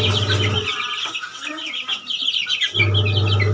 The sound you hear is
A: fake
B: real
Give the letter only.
B